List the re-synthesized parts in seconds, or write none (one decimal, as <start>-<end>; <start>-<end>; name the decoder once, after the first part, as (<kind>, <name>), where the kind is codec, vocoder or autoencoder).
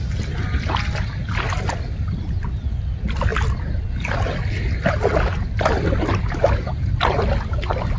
none